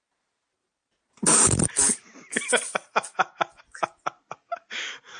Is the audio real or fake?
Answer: real